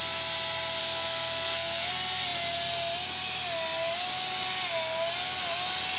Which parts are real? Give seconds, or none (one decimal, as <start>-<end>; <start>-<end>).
0.0-0.8; 1.9-6.0